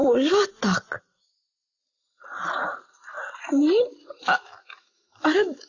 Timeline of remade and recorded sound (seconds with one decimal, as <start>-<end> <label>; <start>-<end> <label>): 0.0-1.2 recorded; 1.2-1.8 remade; 1.8-4.2 recorded; 4.2-5.7 remade